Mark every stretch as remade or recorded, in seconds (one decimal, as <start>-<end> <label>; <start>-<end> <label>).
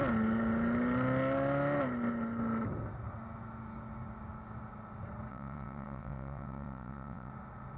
0.0-5.3 recorded; 5.3-7.3 remade; 7.3-7.8 recorded